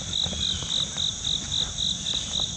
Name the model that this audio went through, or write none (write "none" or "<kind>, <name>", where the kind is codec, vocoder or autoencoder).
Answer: none